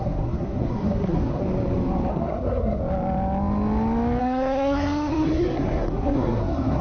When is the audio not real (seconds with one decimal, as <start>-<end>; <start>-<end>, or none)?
0.0-1.4; 2.1-2.8; 4.2-6.8